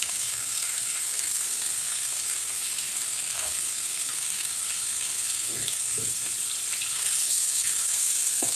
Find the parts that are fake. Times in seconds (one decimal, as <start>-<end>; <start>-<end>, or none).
0.0-6.3; 6.9-8.6